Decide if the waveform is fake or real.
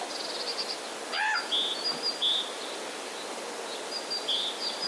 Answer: real